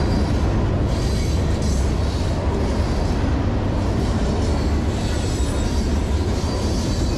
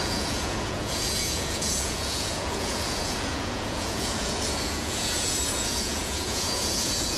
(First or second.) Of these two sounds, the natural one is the first